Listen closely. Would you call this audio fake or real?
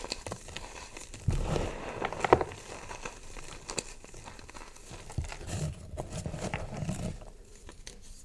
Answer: fake